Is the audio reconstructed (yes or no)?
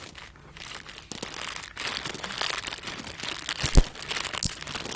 no